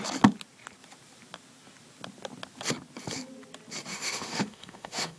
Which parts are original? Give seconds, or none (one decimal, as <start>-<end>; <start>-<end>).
0.0-3.9

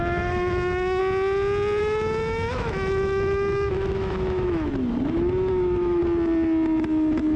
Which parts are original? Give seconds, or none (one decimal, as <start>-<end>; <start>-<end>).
1.0-1.8; 4.7-5.5; 6.0-7.4

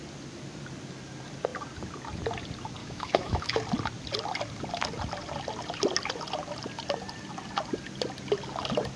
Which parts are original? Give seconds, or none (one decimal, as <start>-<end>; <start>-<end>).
0.0-2.8; 3.6-9.0

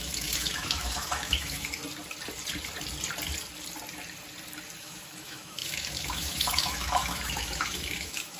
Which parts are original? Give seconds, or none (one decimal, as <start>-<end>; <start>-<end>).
1.8-4.8

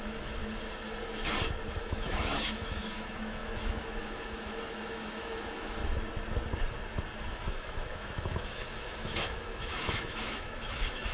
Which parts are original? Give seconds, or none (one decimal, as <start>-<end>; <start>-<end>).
0.4-1.7; 5.8-7.3

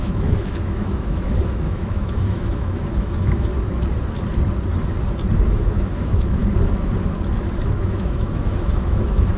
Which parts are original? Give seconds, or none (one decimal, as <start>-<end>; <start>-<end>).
3.5-5.5; 6.4-7.4

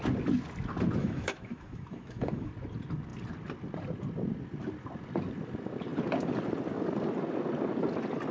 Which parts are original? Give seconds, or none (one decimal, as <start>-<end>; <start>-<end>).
0.0-1.0; 2.5-8.3